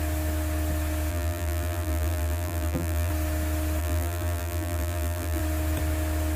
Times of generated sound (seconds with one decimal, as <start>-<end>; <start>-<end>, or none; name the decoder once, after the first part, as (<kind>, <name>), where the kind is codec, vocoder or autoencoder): 1.1-3.1 (vocoder, BigVGAN v2); 3.8-5.4